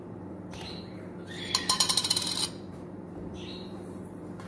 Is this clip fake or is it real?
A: fake